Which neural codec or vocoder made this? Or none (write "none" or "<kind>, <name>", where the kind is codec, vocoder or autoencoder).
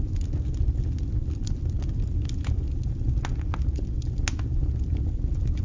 none